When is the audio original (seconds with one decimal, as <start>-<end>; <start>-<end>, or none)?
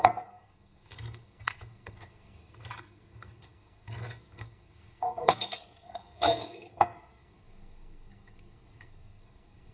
none